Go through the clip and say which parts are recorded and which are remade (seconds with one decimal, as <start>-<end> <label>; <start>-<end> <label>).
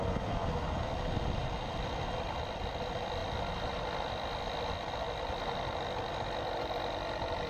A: 0.0-7.5 recorded